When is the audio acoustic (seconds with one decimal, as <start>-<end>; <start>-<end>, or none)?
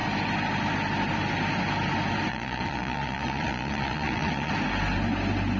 0.0-2.3; 4.5-5.6